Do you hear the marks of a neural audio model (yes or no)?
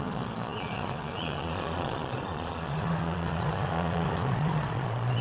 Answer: yes